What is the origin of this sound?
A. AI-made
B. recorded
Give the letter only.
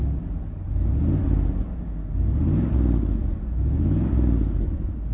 B